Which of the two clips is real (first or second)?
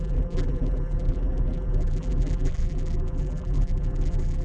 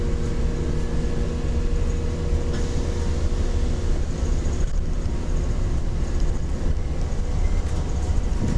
second